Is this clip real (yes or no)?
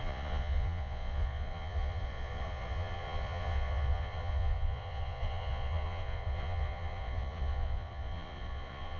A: no